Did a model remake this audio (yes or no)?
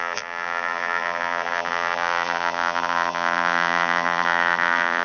yes